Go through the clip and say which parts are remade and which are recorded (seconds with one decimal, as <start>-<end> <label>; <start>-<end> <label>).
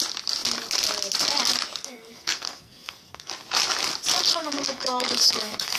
0.0-1.8 recorded; 1.8-3.3 remade; 3.3-4.3 recorded; 4.3-5.8 remade